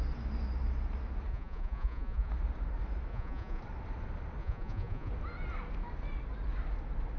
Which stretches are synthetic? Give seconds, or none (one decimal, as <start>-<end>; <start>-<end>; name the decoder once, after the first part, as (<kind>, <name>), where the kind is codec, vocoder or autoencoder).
1.3-2.3 (vocoder, Vocos); 3.1-3.6; 4.4-5.1